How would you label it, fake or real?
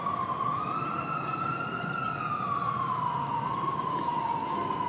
real